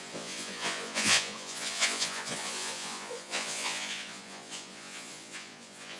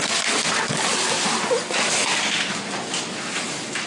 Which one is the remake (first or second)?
first